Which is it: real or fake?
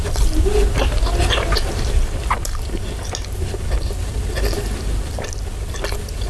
real